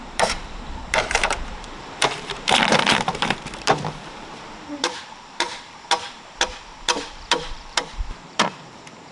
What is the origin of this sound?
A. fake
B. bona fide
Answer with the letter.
A